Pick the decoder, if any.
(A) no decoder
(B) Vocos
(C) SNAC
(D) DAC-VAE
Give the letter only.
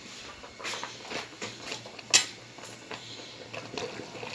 A